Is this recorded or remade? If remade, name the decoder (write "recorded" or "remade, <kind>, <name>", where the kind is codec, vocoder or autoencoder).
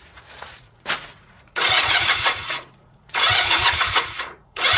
remade, vocoder, Vocos